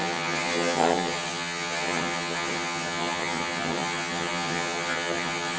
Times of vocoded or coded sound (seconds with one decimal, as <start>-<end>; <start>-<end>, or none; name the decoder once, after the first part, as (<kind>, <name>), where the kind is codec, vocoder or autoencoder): 0.0-5.6 (vocoder, HiFi-GAN)